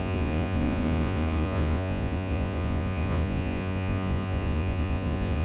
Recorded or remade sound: remade